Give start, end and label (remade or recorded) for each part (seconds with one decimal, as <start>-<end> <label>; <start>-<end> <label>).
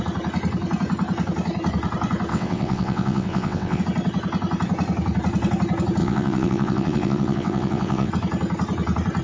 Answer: 0.0-2.3 recorded; 2.3-3.8 remade; 3.8-6.0 recorded; 6.0-8.1 remade; 8.1-9.2 recorded